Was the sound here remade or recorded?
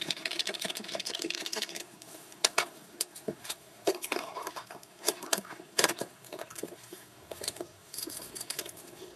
remade